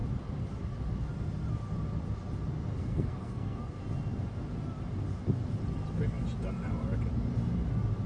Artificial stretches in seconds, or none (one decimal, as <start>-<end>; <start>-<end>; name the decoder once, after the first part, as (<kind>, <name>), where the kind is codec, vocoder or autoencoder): 2.7-3.8 (codec, SNAC)